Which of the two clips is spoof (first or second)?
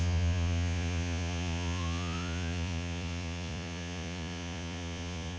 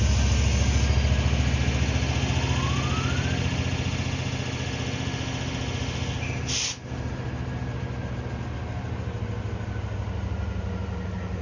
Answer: first